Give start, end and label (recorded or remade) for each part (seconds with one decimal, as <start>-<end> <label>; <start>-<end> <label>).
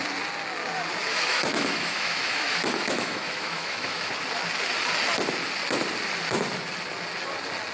0.0-1.1 recorded; 1.1-4.1 remade; 4.1-7.7 recorded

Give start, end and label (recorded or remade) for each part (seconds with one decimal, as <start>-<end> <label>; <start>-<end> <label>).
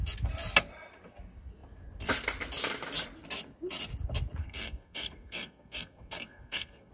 0.0-4.4 recorded; 4.4-6.9 remade